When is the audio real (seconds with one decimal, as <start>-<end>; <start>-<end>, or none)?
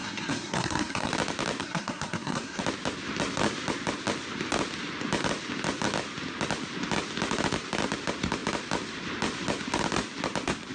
1.1-1.6; 2.6-10.7